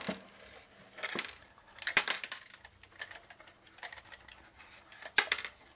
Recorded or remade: recorded